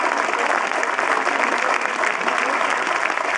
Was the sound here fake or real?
real